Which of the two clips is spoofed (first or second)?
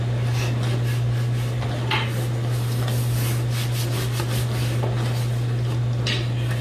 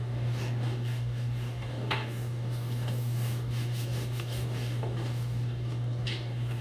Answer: second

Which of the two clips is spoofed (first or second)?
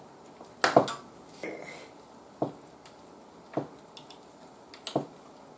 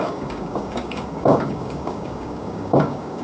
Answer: second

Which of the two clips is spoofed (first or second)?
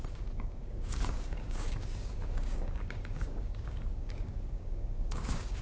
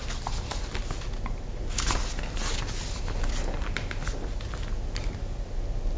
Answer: first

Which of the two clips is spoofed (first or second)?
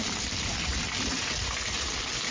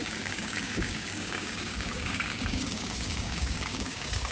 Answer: second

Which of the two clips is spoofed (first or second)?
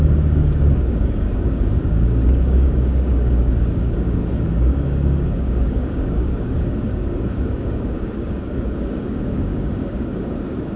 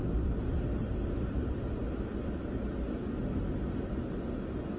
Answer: first